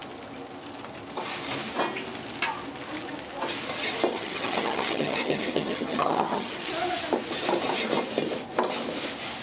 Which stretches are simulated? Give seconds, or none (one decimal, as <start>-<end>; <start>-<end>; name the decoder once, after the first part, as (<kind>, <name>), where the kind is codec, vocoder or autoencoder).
4.1-6.7 (vocoder, HiFi-GAN)